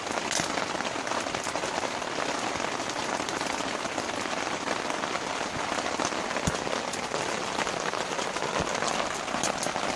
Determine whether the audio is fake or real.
real